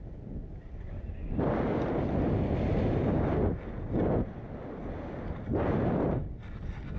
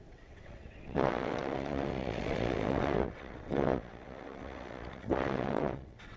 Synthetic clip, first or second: second